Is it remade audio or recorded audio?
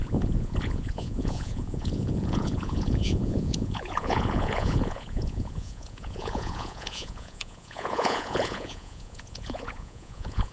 remade